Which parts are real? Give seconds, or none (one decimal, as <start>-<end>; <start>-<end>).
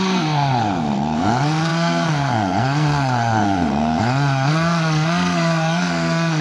none